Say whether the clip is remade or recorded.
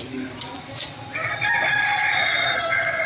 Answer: recorded